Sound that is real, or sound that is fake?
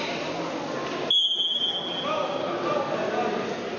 real